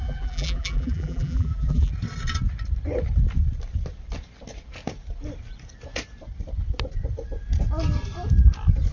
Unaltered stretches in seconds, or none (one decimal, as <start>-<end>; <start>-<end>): 1.9-8.9